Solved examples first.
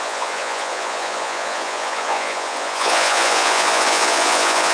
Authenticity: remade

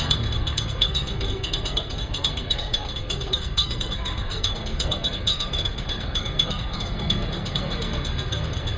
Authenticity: remade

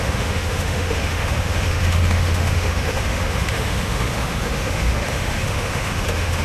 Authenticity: remade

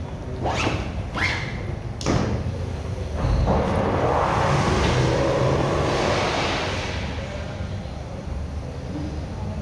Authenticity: recorded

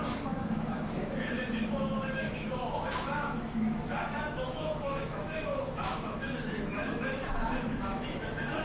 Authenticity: remade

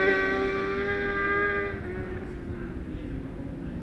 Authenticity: recorded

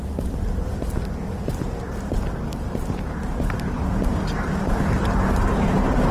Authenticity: remade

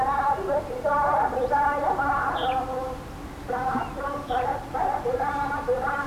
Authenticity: recorded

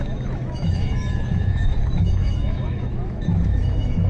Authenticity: remade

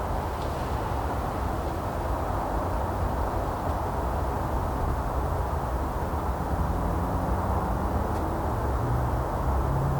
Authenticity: recorded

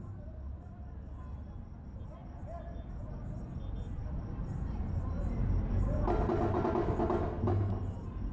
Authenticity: recorded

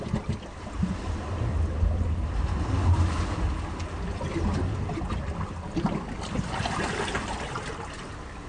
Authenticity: recorded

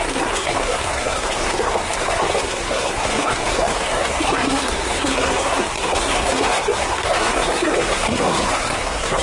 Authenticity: remade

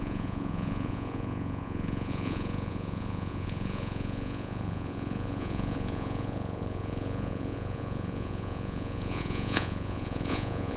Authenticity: remade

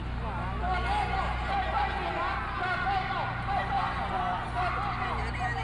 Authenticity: recorded